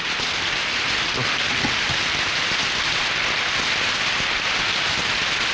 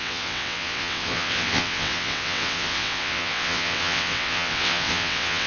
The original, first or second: first